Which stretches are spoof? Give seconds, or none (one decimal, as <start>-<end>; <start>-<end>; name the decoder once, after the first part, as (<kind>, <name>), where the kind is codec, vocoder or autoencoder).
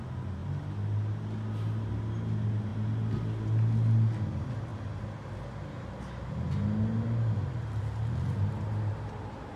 none